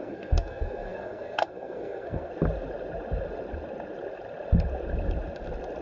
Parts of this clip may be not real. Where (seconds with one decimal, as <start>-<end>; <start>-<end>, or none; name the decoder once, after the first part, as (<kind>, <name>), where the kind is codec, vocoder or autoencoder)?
0.0-2.3 (codec, SNAC)